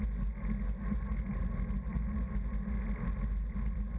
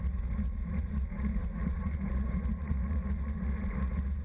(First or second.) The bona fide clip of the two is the first